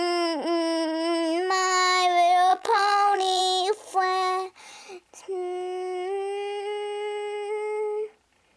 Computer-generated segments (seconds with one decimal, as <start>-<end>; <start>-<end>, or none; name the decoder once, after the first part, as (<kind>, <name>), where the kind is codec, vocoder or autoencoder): 2.5-3.4 (vocoder, BigVGAN v2)